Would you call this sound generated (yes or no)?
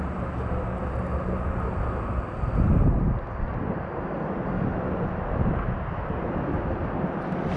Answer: no